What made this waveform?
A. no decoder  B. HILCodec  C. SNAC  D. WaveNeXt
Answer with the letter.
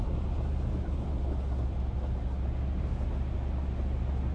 A